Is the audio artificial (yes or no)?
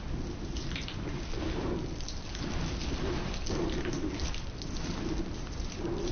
no